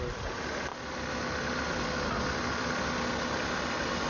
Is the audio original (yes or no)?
yes